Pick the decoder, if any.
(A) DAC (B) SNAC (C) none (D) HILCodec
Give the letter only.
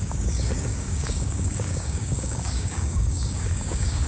A